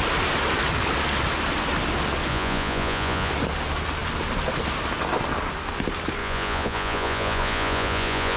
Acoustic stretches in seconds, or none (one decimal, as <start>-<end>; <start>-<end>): 0.0-2.3; 3.3-6.2